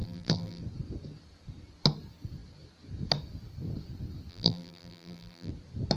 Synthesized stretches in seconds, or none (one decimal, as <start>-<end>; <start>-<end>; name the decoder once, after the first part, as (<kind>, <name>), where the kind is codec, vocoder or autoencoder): 0.0-0.6 (vocoder, BigVGAN v2); 4.3-5.5